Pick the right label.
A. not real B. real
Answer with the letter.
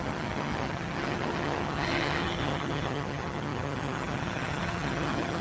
A